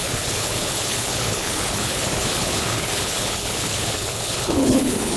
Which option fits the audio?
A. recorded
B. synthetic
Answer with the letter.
B